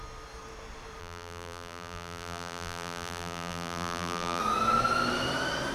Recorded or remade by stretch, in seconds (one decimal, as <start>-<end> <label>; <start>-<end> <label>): 0.0-1.0 recorded; 1.0-4.4 remade; 4.4-5.7 recorded